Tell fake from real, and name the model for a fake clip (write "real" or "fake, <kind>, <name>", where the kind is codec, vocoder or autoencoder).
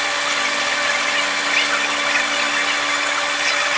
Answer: real